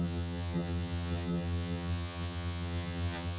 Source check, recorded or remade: remade